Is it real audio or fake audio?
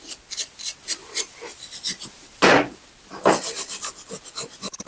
real